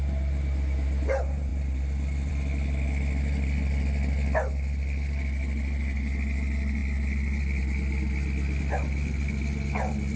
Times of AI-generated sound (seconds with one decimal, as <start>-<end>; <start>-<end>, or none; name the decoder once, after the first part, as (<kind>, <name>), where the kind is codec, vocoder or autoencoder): none